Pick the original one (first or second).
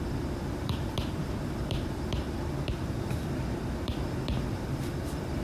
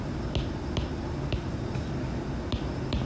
second